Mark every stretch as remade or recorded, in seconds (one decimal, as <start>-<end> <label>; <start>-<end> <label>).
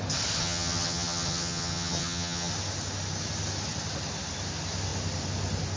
0.0-0.4 recorded; 0.4-2.5 remade; 2.5-5.8 recorded